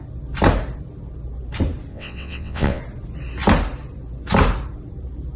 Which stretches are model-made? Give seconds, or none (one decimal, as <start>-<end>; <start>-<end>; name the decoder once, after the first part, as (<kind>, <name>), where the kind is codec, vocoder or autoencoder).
1.9-2.8 (vocoder, WaveNeXt)